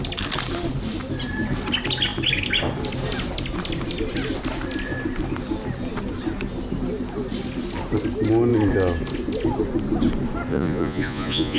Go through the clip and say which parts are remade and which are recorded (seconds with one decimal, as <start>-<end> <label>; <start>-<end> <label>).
0.0-10.5 recorded; 10.5-11.6 remade